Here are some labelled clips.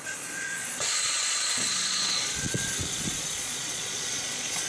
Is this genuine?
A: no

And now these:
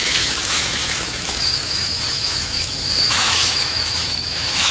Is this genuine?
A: no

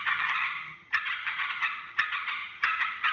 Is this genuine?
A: no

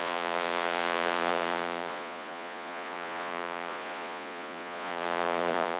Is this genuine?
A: no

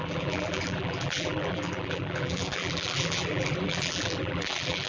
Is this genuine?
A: no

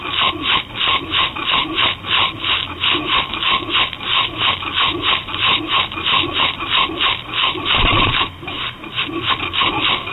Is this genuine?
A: yes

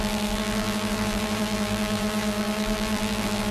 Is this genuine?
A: no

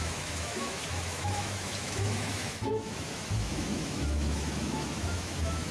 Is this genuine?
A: no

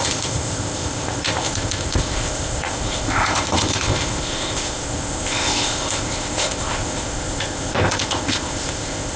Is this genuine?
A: no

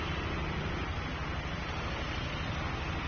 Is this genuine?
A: yes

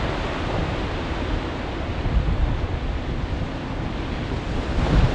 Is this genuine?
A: yes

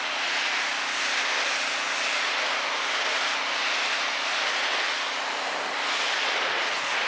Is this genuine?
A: yes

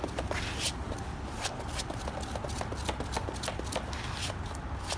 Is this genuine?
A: yes